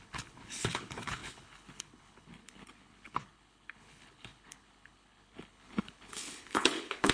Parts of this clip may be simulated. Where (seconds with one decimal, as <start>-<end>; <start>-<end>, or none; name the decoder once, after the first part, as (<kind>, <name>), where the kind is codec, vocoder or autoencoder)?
0.0-7.1 (codec, HILCodec)